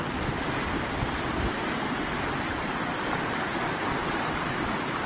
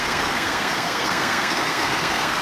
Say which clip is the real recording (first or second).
first